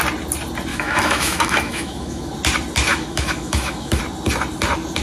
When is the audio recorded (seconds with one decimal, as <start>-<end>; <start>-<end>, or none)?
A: 0.0-0.7; 2.3-2.9; 4.0-5.0